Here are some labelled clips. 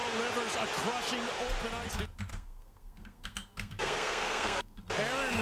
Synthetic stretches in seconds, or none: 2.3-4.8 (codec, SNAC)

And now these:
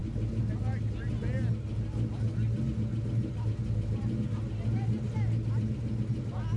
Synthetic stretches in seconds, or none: none

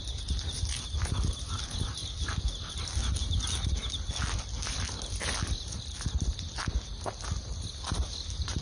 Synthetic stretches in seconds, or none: none